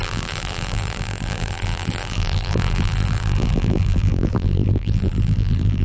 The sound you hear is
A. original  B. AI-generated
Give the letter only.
B